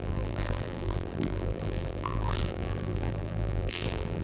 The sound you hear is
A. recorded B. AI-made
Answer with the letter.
B